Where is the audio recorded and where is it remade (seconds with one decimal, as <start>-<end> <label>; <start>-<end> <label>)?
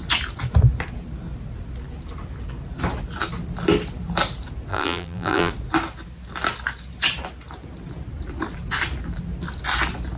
0.0-4.7 recorded; 4.7-5.5 remade; 5.5-10.2 recorded